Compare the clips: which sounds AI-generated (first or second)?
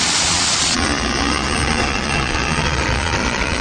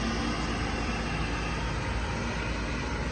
first